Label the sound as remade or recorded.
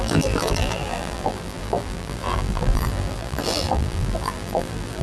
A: remade